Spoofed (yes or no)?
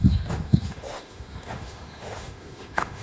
yes